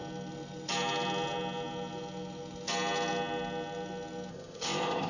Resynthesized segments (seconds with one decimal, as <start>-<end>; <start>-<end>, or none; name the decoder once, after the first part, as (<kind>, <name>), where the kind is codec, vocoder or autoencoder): 4.3-5.1 (codec, ZipCodec)